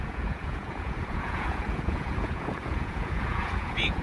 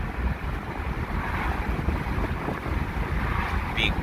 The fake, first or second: first